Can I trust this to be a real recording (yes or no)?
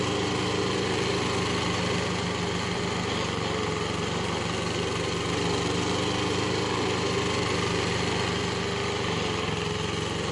yes